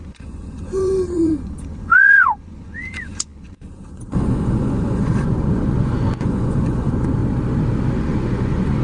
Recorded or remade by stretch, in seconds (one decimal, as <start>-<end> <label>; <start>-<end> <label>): 0.0-7.2 remade; 7.2-8.0 recorded; 8.0-8.8 remade